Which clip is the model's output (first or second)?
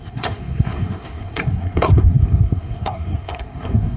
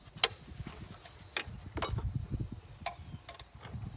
first